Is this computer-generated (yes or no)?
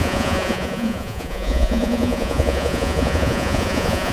yes